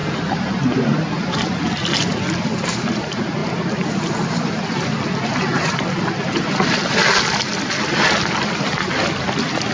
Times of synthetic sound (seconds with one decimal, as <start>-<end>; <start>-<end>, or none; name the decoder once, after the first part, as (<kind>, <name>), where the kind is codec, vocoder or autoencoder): 1.3-9.7 (vocoder, BigVGAN v2)